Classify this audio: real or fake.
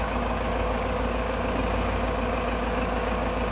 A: fake